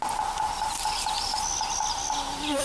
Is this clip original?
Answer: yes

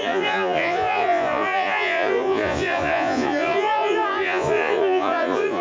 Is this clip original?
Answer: no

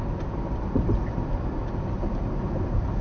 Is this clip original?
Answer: yes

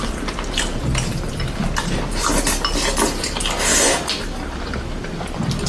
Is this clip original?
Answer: yes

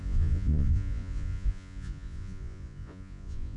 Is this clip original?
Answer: no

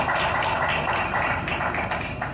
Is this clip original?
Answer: yes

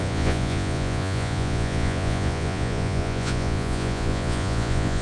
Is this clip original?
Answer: no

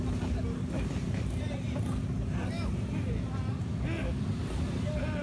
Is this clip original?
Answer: yes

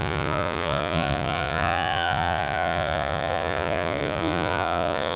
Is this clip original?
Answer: no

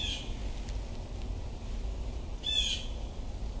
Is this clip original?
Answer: yes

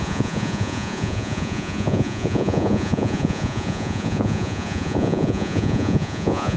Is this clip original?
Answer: no